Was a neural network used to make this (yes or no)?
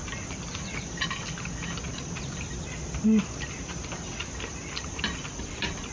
no